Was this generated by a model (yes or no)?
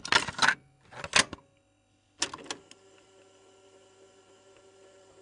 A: no